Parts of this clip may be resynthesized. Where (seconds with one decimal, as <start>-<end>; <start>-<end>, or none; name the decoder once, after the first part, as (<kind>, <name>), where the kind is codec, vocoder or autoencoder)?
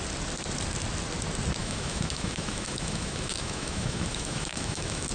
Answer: 1.6-5.1 (autoencoder, DAC-VAE)